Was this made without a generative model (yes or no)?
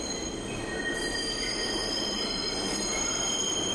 yes